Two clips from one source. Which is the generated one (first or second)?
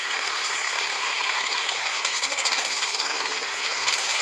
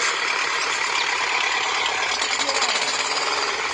first